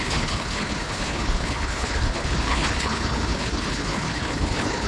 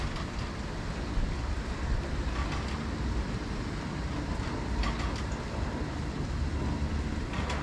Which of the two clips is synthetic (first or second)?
first